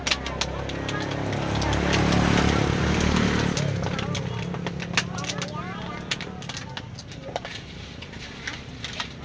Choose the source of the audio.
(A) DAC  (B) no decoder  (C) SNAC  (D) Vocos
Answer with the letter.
B